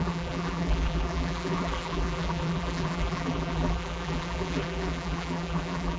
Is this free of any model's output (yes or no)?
no